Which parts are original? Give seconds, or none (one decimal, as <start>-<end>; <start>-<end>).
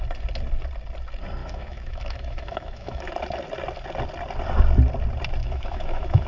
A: 0.0-1.4; 3.1-5.4